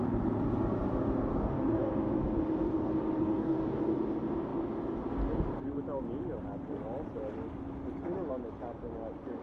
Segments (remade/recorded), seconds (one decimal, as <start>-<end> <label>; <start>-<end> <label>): 0.0-1.3 recorded; 1.3-1.9 remade; 1.9-3.2 recorded; 3.2-3.8 remade; 3.8-9.4 recorded